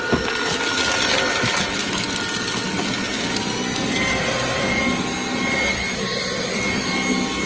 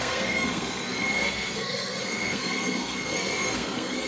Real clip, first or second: first